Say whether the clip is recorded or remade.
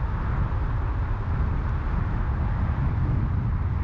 recorded